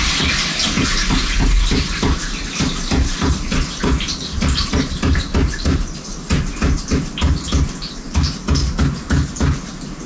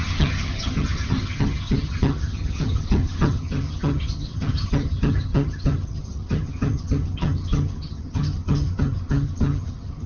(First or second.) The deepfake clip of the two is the second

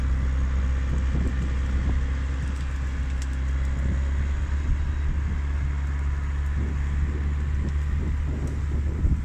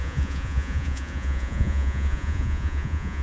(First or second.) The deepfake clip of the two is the second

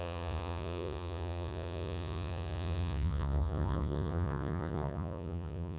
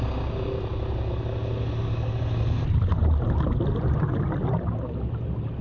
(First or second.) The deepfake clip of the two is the first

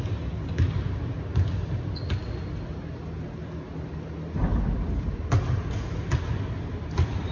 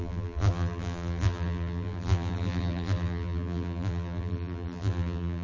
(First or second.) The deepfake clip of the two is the second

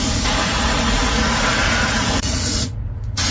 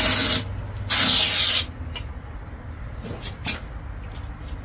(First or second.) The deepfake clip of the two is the first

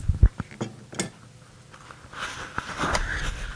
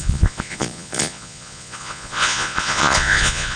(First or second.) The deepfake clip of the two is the second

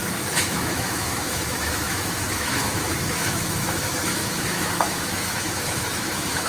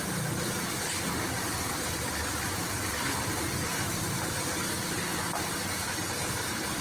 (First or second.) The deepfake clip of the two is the first